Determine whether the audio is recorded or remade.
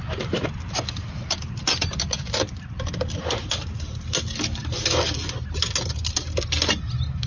recorded